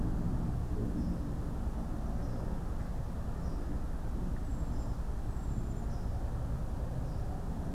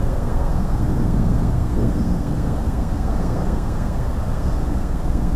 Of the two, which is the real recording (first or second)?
first